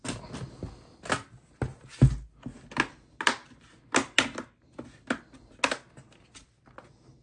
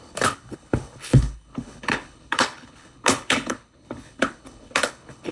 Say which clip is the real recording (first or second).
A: first